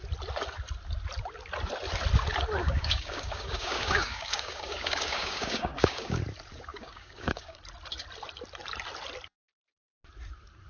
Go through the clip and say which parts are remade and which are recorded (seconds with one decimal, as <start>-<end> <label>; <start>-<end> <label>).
0.0-2.6 recorded; 2.6-6.2 remade; 6.2-6.7 recorded; 6.7-7.6 remade; 7.6-10.7 recorded